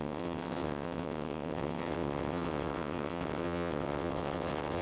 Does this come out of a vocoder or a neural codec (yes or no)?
yes